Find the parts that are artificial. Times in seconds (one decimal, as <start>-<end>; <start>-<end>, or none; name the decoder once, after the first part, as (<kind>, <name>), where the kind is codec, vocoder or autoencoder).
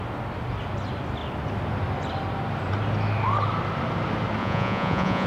4.4-5.3 (vocoder, Vocos)